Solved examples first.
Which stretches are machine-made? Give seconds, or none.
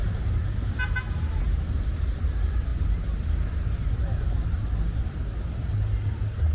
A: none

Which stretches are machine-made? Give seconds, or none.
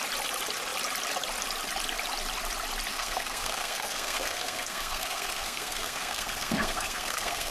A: 2.9-7.5 (codec, SNAC)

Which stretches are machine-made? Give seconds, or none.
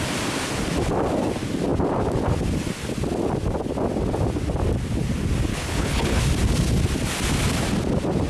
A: 5.5-6.2 (codec, HILCodec)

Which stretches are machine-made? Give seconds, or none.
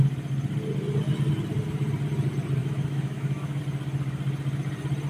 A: 2.6-3.6 (autoencoder, DAC-VAE)